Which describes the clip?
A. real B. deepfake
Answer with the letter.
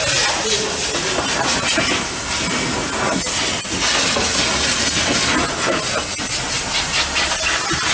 A